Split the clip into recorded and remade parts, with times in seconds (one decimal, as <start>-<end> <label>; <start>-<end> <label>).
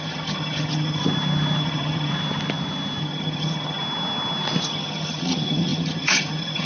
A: 0.0-1.0 remade; 1.0-1.6 recorded; 1.6-2.1 remade; 2.1-3.0 recorded; 3.0-3.8 remade; 3.8-4.7 recorded; 4.7-6.7 remade